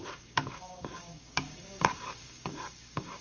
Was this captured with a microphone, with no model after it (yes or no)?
no